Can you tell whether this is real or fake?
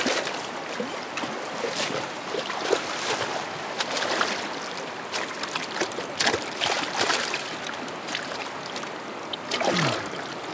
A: real